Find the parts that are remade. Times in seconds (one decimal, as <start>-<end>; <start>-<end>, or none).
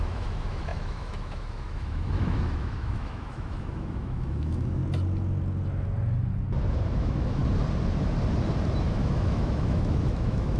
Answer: 0.0-4.8; 6.9-7.4; 8.8-10.6